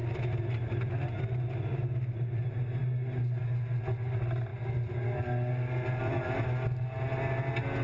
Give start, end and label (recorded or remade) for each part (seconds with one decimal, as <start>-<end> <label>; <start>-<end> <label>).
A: 0.0-7.8 recorded